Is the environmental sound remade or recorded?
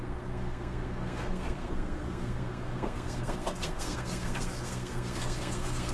remade